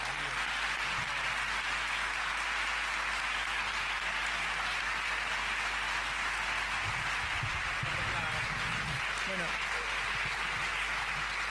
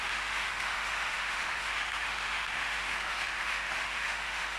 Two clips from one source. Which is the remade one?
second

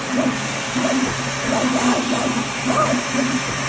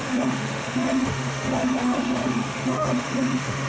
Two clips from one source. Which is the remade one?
second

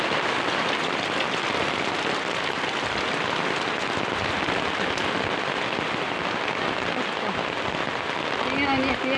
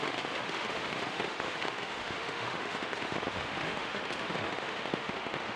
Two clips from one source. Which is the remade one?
second